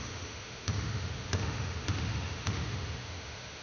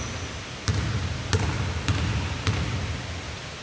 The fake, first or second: first